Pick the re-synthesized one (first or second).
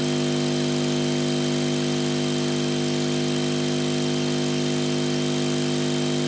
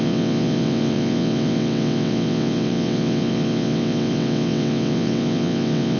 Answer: second